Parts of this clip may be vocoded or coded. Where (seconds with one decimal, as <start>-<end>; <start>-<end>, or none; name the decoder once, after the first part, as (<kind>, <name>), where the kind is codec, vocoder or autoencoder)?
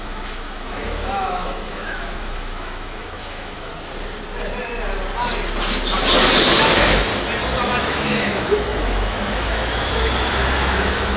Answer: 0.0-3.7 (autoencoder, DAC-VAE); 6.6-7.1; 7.8-11.2